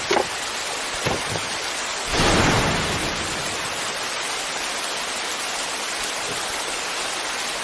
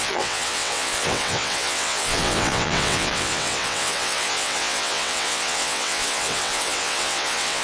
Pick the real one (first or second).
first